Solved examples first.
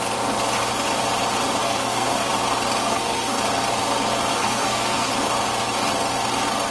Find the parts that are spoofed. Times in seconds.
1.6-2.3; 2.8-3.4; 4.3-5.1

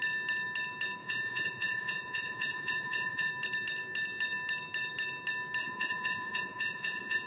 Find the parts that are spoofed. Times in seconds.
1.0-3.3; 5.6-7.3

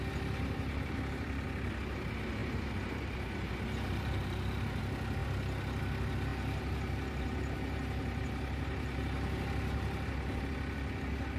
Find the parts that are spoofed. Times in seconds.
2.4-4.8; 6.3-10.4

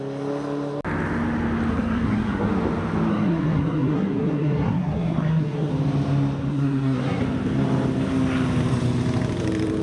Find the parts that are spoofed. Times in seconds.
1.7-2.5; 3.1-5.7; 6.5-7.2